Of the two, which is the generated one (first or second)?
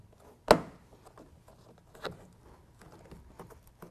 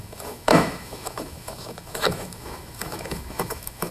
second